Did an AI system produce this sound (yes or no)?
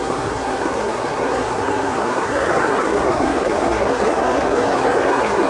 yes